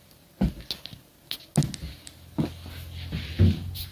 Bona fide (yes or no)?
yes